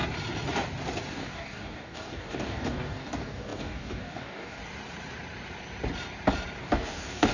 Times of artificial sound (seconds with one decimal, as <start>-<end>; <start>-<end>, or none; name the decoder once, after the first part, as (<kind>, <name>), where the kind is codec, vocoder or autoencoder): 1.1-4.6 (codec, DAC); 6.6-7.3